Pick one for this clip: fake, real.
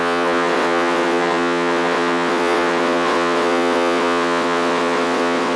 fake